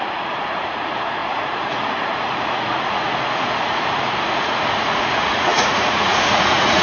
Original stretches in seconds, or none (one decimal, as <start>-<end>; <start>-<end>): none